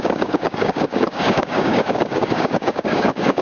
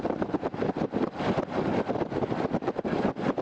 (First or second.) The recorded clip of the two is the second